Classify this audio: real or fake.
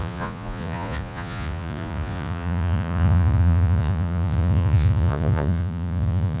fake